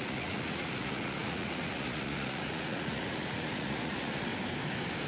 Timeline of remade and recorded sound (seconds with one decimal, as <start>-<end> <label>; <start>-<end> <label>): 0.0-4.3 remade; 4.3-5.1 recorded